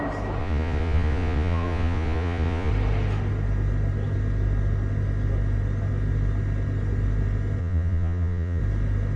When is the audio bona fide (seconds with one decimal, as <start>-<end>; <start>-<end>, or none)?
0.0-0.4; 2.7-7.6; 8.6-9.2